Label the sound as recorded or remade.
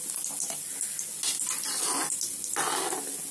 recorded